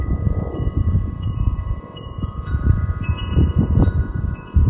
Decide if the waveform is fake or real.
fake